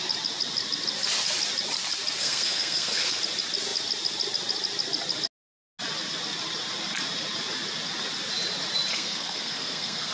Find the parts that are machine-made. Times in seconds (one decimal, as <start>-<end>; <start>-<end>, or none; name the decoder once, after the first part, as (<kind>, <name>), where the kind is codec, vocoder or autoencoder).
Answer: 2.2-3.2 (codec, SNAC); 8.9-10.1